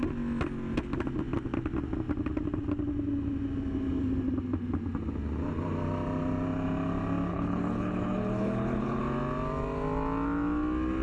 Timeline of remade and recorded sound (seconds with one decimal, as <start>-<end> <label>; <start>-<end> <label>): 0.0-7.3 recorded; 7.3-9.0 remade; 9.0-11.0 recorded